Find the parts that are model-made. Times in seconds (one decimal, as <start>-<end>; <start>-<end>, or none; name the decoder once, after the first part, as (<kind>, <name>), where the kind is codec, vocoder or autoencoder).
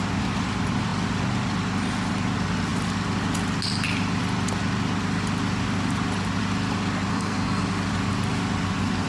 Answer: 7.1-7.6 (codec, SNAC)